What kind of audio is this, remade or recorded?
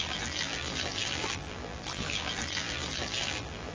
remade